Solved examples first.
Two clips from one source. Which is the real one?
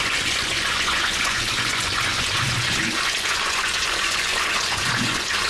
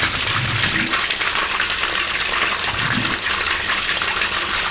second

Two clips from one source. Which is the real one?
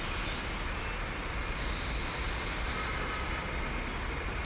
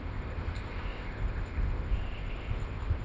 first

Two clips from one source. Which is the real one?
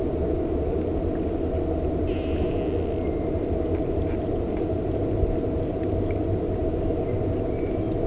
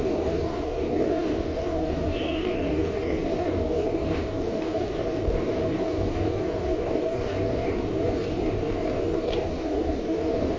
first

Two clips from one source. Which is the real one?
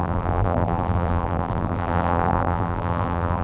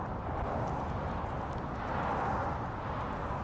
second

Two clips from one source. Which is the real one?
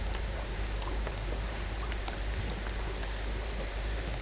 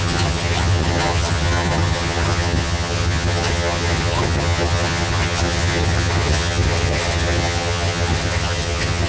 first